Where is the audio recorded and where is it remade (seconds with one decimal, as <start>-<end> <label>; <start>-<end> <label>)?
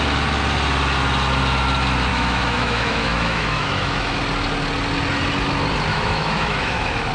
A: 0.0-2.1 recorded; 2.1-4.2 remade; 4.2-5.9 recorded; 5.9-7.1 remade